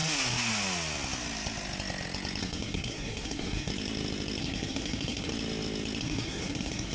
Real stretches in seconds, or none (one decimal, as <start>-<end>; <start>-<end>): 0.0-2.4; 3.7-4.4; 5.3-6.0